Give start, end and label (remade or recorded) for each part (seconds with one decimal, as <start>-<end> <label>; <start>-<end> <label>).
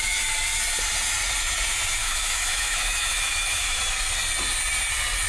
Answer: 0.0-2.0 recorded; 2.0-3.8 remade; 3.8-5.3 recorded